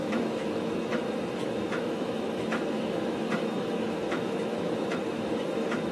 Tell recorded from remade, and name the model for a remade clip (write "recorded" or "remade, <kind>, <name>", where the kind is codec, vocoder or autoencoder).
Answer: remade, autoencoder, DAC-VAE